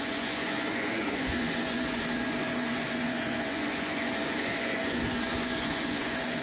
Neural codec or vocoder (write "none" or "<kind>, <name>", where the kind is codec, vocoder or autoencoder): vocoder, Vocos